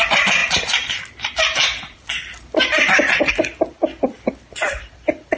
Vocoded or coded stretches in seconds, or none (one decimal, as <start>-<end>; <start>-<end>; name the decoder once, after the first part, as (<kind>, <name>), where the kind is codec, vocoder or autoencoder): 0.0-5.4 (vocoder, BigVGAN v2)